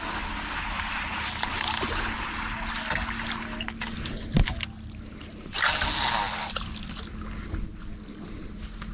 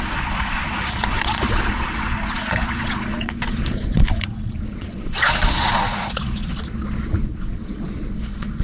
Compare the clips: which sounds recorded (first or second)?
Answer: first